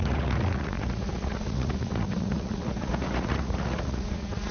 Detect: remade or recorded remade